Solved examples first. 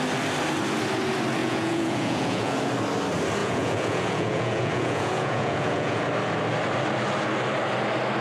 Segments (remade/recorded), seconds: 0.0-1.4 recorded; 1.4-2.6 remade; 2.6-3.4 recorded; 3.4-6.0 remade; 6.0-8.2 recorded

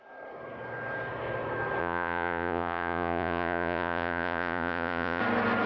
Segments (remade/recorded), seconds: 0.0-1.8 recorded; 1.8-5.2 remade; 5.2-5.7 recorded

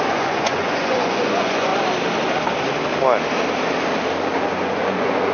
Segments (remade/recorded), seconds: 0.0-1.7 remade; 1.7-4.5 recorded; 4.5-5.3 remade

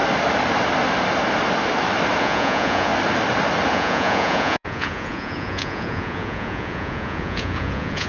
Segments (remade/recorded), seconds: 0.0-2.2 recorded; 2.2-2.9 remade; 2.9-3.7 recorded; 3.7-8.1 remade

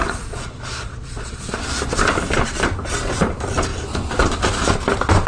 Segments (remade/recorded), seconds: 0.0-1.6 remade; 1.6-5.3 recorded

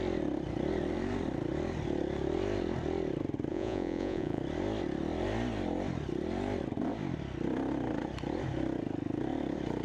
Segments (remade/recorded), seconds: 0.0-3.5 recorded; 3.5-4.4 remade; 4.4-9.8 recorded

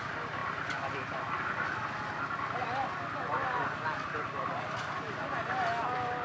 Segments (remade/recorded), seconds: 0.0-6.2 recorded